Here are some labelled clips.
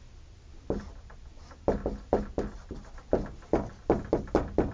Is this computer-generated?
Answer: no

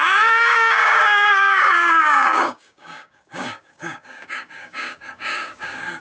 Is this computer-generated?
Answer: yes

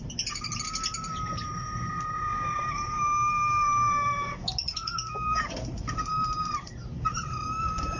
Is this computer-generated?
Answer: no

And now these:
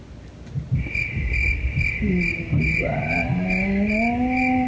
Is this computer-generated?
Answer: no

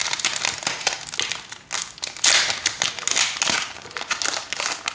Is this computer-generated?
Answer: no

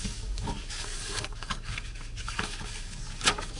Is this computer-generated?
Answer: yes